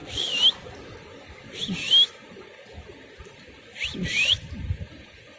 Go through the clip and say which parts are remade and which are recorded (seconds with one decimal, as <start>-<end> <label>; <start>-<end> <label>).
0.0-3.2 recorded; 3.2-5.4 remade